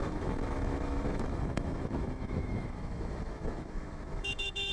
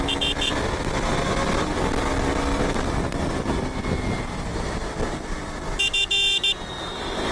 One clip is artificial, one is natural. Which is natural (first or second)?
second